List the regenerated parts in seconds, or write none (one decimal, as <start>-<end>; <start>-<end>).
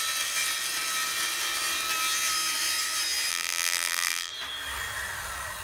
3.3-4.3